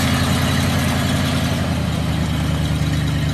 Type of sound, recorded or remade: recorded